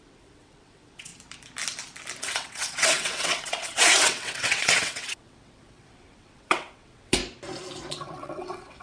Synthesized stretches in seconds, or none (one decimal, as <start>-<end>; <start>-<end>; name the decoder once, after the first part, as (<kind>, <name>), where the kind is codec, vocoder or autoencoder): 0.0-1.1 (vocoder, WaveNeXt); 2.2-7.2; 7.9-8.8